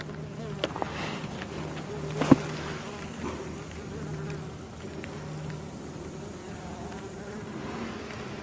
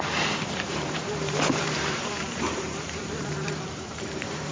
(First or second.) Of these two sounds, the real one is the first